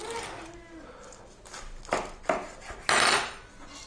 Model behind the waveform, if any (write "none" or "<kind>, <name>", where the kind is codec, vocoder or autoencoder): none